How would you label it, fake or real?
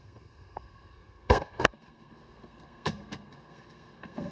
fake